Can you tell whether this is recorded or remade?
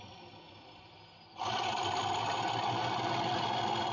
recorded